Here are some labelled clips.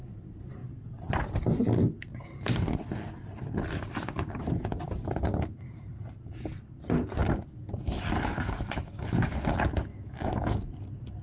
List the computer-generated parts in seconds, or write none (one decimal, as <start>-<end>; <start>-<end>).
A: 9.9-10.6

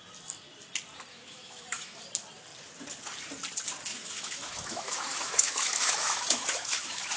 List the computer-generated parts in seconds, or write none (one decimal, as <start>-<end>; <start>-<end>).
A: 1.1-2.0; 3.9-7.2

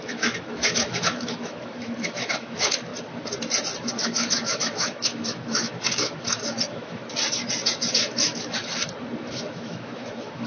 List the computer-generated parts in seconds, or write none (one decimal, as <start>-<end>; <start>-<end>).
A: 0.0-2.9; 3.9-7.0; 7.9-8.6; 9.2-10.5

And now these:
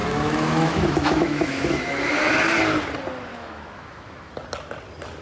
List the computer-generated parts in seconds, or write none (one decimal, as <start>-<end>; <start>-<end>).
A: 0.0-2.3; 3.3-4.3

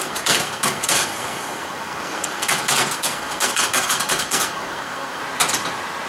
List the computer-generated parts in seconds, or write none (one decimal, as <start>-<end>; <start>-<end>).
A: 0.0-5.2

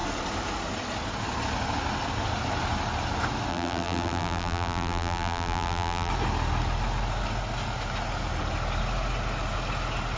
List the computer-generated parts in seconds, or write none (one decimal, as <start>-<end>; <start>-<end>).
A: 3.5-6.1

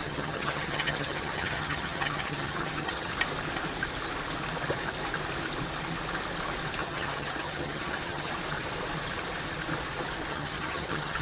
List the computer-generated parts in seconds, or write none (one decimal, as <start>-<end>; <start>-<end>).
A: 0.0-3.1; 6.8-8.3; 10.3-11.2

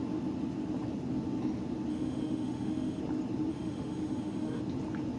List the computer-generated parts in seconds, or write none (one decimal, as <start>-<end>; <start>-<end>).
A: 1.9-3.0; 3.5-4.6